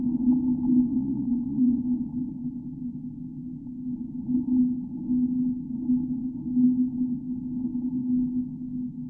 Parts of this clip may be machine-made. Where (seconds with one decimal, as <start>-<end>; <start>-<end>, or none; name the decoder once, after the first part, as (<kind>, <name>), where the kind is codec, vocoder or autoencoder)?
0.9-1.8 (vocoder, WaveNeXt)